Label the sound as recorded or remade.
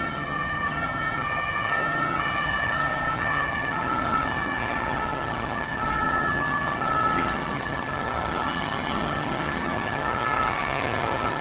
remade